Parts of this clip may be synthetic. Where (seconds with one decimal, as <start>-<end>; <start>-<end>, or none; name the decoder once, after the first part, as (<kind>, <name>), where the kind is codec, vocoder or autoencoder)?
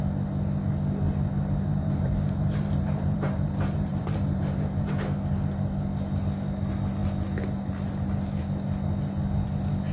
1.7-4.9 (vocoder, BigVGAN v2)